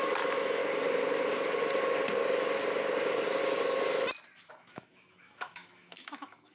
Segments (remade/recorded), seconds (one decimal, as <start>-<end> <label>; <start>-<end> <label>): 0.0-0.6 remade; 0.6-4.5 recorded; 4.5-6.5 remade